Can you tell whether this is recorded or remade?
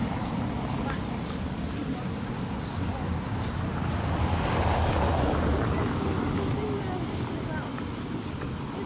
recorded